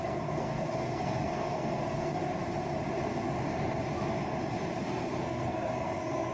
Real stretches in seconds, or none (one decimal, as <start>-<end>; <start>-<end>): 2.2-5.2